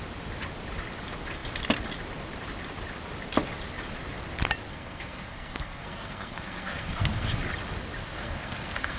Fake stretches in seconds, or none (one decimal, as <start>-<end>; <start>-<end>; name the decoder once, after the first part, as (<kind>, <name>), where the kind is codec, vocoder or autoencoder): 4.7-7.4 (codec, SNAC); 8.0-9.0